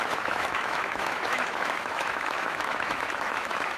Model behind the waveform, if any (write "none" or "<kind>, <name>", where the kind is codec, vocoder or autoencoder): autoencoder, DAC-VAE